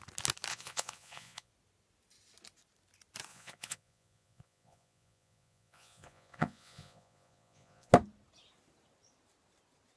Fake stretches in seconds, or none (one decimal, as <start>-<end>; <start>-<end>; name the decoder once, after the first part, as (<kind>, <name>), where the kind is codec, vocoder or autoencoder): 0.5-1.5 (vocoder, Vocos); 3.3-7.9